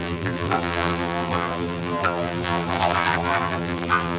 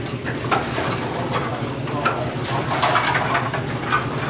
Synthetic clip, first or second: first